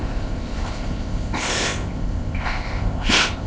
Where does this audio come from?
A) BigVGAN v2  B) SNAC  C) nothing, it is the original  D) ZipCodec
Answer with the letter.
D